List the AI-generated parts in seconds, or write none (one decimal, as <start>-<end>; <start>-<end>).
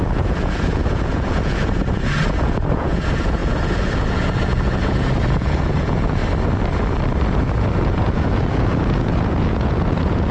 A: 0.0-6.2; 7.3-10.3